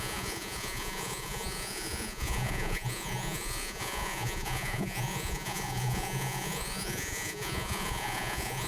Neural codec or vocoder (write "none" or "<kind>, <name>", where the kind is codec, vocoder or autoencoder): vocoder, Vocos